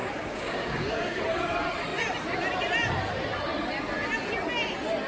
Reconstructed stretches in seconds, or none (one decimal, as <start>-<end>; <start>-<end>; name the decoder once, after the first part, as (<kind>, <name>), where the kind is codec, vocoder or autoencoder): 0.0-1.2 (codec, DAC)